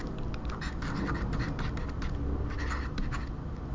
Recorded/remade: recorded